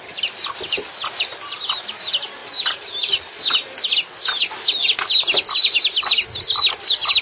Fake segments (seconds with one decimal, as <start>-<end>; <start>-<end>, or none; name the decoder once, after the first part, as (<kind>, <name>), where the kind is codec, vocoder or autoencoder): none